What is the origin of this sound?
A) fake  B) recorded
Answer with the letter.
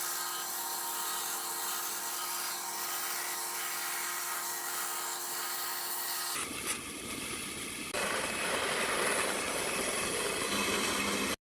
B